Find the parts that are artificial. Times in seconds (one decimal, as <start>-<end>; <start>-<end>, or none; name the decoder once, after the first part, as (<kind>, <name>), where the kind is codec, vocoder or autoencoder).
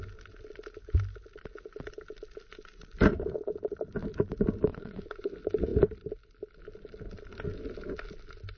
4.7-5.3 (vocoder, WaveNeXt)